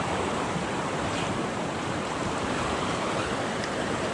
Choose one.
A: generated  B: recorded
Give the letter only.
A